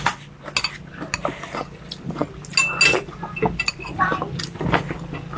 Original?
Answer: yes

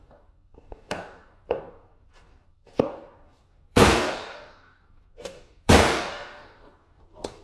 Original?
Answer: no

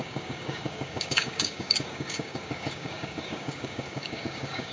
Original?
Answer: no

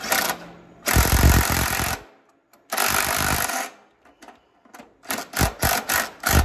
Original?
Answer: yes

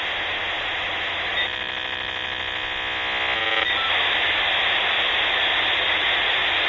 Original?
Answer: yes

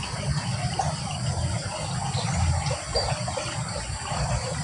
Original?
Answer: yes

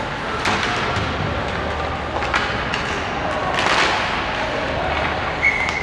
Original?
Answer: yes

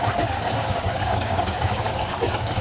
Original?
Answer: no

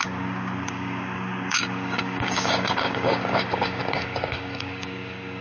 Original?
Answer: no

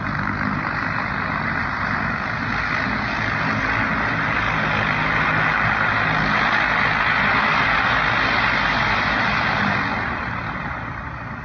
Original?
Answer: yes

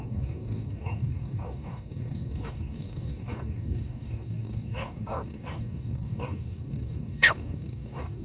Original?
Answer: no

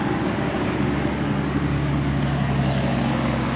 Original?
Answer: no